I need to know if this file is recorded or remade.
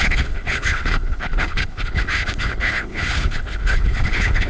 remade